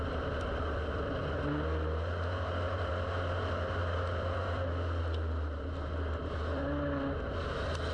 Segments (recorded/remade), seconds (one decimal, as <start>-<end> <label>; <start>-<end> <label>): 0.0-7.9 recorded